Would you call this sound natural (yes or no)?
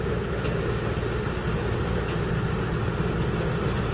yes